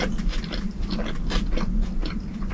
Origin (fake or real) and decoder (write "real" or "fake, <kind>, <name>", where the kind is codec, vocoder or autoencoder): real